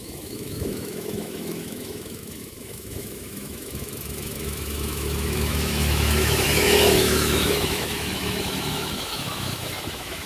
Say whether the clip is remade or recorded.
remade